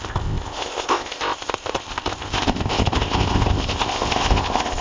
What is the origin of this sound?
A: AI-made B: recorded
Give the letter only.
A